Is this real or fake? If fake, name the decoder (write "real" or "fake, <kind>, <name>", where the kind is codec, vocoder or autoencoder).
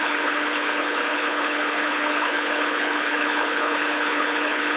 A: fake, codec, HILCodec